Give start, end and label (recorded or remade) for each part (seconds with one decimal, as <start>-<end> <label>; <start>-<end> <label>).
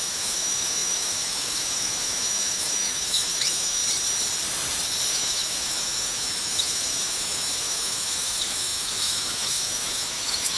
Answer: 0.0-3.8 remade; 3.8-5.1 recorded; 5.1-10.6 remade